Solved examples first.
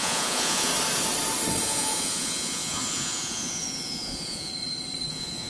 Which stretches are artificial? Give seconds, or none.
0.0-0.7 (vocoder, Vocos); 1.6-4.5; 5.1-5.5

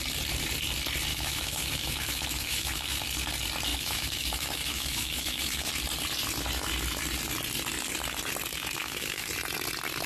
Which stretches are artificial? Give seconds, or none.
1.1-3.0 (autoencoder, DAC-VAE); 3.7-5.7; 8.8-9.3

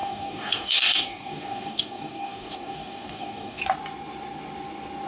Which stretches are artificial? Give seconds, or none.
0.0-3.6 (codec, DAC)

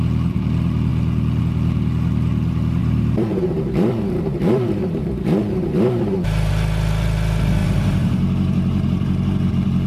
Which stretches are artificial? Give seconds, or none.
2.8-6.5 (vocoder, BigVGAN v2); 7.6-9.5

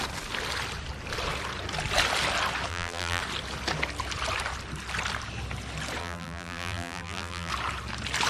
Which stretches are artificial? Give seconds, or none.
2.7-3.2 (vocoder, BigVGAN v2); 6.0-7.5

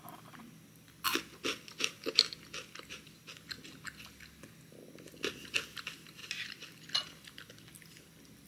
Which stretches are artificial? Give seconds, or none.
6.2-7.5 (vocoder, BigVGAN v2)

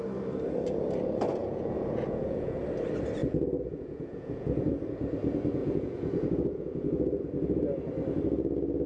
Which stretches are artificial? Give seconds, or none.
1.4-2.6 (vocoder, Vocos); 3.2-4.7; 5.6-7.2

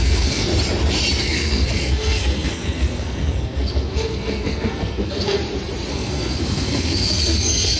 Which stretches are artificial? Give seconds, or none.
0.0-0.5 (codec, SNAC); 1.2-5.4; 5.9-7.8